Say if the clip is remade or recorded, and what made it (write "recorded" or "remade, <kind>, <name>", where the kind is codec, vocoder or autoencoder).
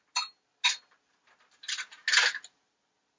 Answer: recorded